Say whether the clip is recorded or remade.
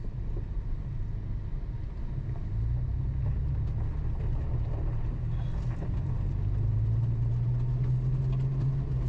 recorded